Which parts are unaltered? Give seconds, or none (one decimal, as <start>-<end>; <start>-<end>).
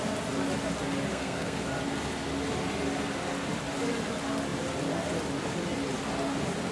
0.0-1.1; 1.6-6.7